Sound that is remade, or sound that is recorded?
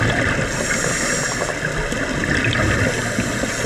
recorded